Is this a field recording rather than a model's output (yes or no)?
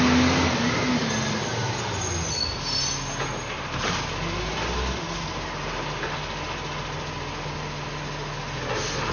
yes